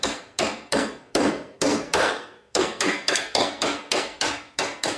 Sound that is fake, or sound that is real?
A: fake